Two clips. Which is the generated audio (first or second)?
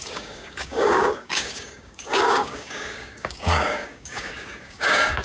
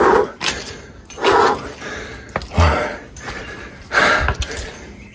first